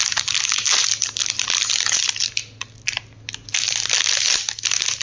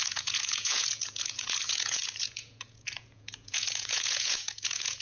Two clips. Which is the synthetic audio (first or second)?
second